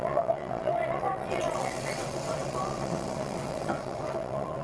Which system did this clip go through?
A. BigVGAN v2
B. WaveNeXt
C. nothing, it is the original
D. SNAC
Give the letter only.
B